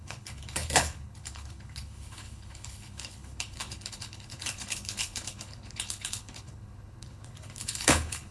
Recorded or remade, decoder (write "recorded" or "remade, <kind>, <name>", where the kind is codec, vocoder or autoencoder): remade, codec, HILCodec